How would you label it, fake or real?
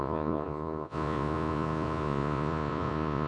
fake